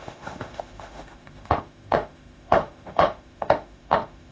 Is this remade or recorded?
remade